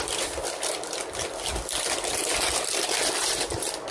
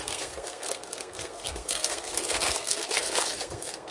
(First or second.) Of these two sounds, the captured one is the first